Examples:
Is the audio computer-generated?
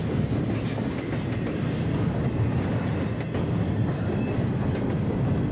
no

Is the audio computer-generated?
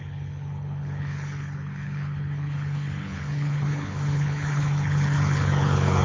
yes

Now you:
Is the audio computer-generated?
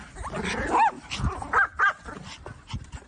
no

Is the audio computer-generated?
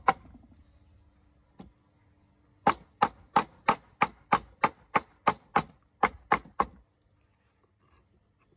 no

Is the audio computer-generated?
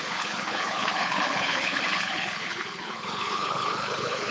yes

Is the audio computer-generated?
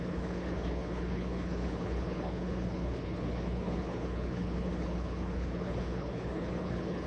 yes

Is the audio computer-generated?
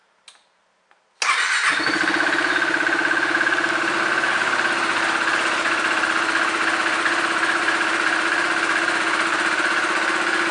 no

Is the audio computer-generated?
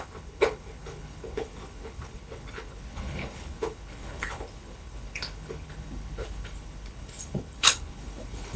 yes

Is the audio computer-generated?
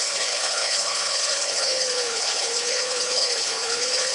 yes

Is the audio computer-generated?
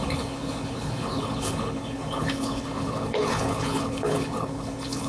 yes